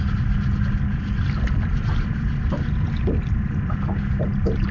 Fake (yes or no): no